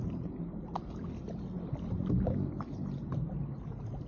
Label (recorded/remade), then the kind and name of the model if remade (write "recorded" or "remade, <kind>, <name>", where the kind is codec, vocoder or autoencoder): recorded